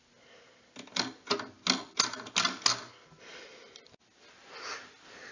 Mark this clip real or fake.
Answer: real